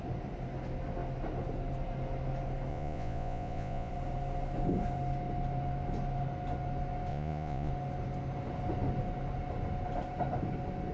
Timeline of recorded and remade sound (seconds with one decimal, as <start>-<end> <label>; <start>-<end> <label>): 0.0-2.7 recorded; 2.7-3.9 remade; 3.9-7.1 recorded; 7.1-7.7 remade; 7.7-10.9 recorded